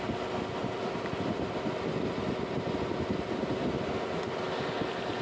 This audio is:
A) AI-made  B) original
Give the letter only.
B